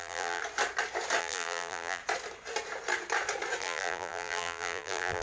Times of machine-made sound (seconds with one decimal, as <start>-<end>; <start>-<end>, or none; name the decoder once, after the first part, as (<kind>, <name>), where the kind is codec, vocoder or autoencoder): 0.0-0.4 (vocoder, BigVGAN v2); 1.2-2.0; 3.6-5.2